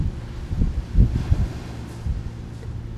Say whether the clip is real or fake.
real